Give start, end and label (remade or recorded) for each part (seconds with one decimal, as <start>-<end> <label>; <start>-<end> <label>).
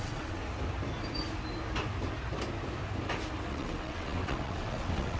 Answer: 0.0-0.4 remade; 0.4-3.5 recorded; 3.5-5.2 remade